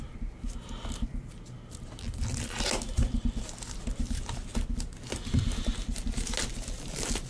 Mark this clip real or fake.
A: real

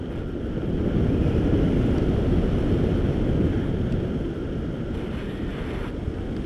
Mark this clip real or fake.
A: real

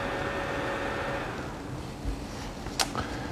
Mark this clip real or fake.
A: real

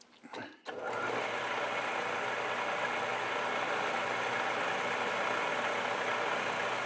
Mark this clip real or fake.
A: real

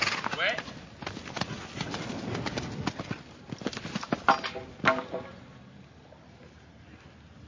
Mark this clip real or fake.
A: real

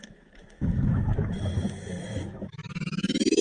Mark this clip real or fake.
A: fake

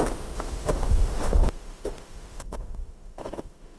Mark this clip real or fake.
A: fake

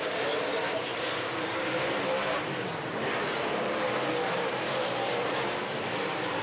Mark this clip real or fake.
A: fake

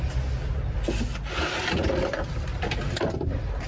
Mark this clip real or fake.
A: real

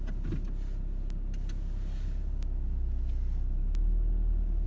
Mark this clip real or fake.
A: real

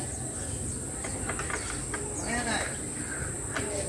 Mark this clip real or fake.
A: real